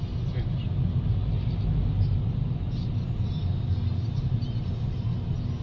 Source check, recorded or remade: recorded